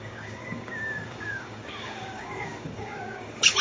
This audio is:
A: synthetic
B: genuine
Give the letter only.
A